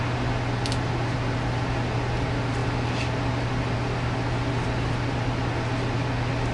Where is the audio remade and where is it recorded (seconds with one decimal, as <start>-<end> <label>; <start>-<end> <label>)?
0.0-6.5 recorded